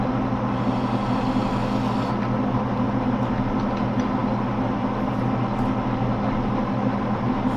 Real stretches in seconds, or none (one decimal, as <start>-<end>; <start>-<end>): 0.0-7.6